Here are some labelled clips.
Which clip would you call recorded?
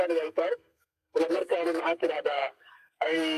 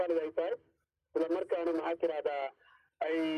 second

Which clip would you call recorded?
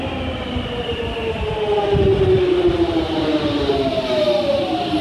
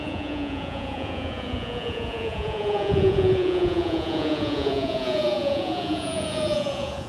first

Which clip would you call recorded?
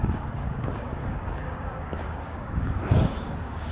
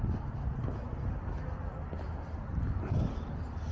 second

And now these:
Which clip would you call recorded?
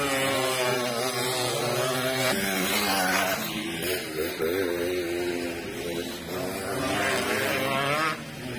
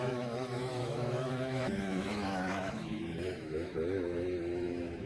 first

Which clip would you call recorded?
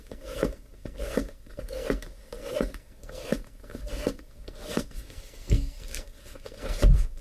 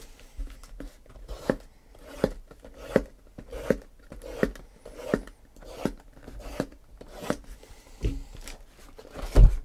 second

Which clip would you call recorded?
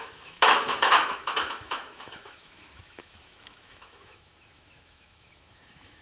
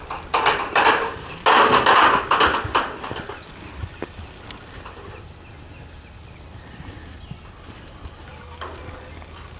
second